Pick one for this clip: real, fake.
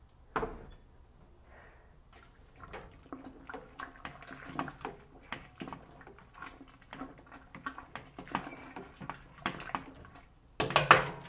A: real